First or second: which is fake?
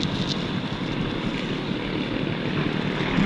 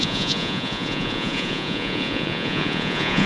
second